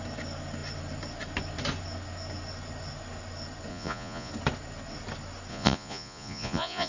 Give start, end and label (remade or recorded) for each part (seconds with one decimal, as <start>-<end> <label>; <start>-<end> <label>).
0.0-3.7 recorded; 3.7-4.3 remade; 4.3-5.5 recorded; 5.5-6.9 remade